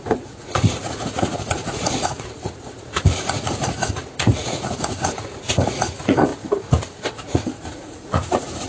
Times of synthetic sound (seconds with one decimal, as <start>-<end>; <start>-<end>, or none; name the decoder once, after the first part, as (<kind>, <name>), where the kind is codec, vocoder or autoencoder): 0.0-6.3 (vocoder, Vocos); 7.1-8.7